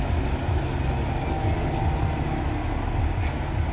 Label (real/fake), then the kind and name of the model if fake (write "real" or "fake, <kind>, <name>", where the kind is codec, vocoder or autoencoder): real